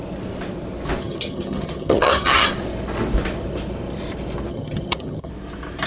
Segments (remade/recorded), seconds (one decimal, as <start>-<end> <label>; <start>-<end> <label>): 0.0-1.0 recorded; 1.0-2.5 remade; 2.5-4.5 recorded; 4.5-5.3 remade; 5.3-5.9 recorded